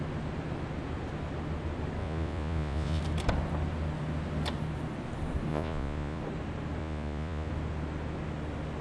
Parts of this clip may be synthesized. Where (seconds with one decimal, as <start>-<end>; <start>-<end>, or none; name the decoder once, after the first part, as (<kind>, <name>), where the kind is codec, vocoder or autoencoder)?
2.0-3.0 (vocoder, Vocos); 5.5-6.2; 6.8-7.5